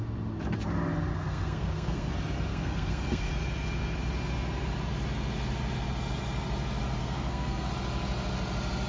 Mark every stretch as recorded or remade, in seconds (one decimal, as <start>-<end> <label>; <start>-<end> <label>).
0.0-1.1 recorded; 1.1-2.1 remade; 2.1-2.5 recorded; 2.5-3.3 remade; 3.3-7.0 recorded; 7.0-7.7 remade; 7.7-8.9 recorded